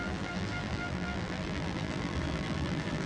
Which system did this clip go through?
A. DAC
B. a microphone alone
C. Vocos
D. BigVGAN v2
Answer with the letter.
D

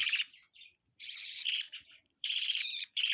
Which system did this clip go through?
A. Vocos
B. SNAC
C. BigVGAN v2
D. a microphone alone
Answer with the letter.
C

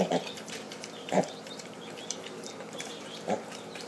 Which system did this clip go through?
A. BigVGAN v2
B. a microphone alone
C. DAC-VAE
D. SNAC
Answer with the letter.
A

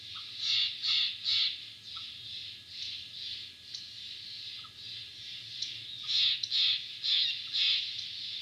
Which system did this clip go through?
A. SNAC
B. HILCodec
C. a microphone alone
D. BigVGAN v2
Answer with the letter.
C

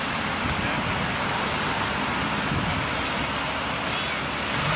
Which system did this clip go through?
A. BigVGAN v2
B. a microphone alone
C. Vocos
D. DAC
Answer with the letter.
B